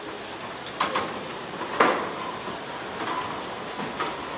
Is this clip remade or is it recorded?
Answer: recorded